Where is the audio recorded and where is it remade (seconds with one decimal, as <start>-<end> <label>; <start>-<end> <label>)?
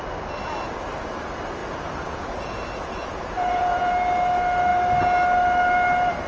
0.0-1.6 recorded; 1.6-3.9 remade; 3.9-6.3 recorded